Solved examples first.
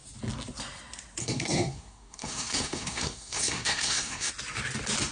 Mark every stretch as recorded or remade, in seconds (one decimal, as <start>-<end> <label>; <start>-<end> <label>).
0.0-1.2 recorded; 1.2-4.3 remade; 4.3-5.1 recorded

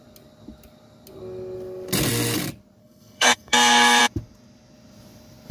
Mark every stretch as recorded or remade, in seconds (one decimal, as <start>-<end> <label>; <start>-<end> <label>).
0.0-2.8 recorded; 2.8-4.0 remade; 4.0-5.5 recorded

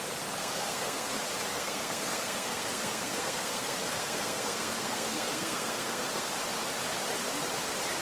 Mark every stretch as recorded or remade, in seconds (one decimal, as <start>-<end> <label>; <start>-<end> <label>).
0.0-0.4 recorded; 0.4-1.1 remade; 1.1-1.5 recorded; 1.5-6.3 remade; 6.3-8.0 recorded

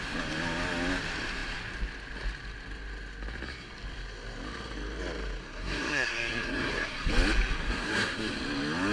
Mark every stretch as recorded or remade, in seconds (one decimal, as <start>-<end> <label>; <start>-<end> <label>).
0.0-5.4 recorded; 5.4-7.1 remade; 7.1-7.6 recorded; 7.6-8.3 remade; 8.3-8.9 recorded